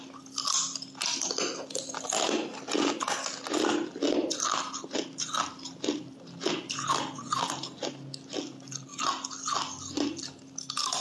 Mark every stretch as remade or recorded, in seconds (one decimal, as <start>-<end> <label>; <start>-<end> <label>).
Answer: 0.0-11.0 recorded